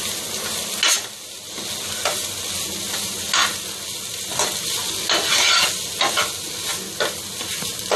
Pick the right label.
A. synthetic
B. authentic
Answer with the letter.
B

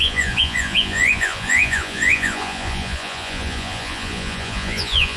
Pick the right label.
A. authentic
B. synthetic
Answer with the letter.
B